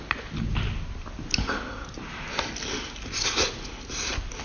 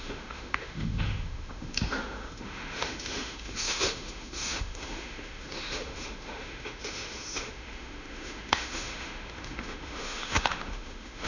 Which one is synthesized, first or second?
second